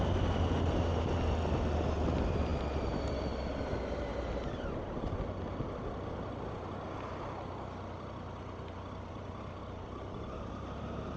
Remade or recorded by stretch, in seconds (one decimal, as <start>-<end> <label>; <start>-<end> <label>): 0.0-2.5 recorded; 2.5-4.7 remade; 4.7-9.6 recorded; 9.6-11.2 remade